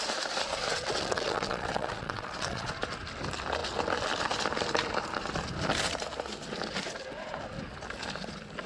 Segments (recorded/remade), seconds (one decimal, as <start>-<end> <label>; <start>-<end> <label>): 0.0-0.7 recorded; 0.7-2.7 remade; 2.7-8.7 recorded